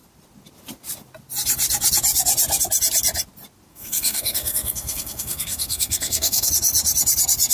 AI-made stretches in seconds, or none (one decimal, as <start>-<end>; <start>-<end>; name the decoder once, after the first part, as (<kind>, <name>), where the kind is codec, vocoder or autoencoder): 3.7-6.5 (codec, SNAC)